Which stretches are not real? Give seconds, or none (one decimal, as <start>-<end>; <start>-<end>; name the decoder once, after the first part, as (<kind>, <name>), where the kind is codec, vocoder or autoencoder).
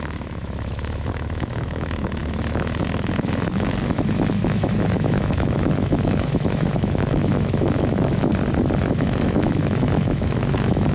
0.0-8.3 (autoencoder, DAC-VAE); 8.8-10.9